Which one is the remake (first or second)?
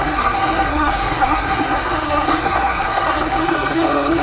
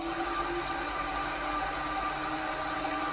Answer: first